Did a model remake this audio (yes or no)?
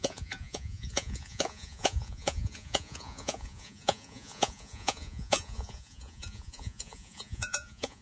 yes